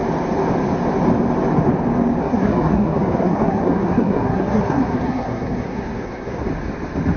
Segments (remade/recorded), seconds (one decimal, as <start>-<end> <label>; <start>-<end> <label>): 0.0-2.2 recorded; 2.2-6.5 remade; 6.5-7.2 recorded